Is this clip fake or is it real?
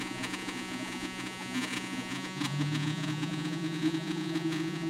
fake